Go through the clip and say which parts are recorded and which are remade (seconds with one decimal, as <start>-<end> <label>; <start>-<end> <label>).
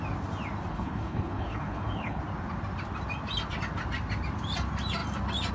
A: 0.0-0.7 recorded; 0.7-2.2 remade; 2.2-5.5 recorded